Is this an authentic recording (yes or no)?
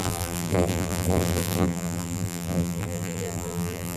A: no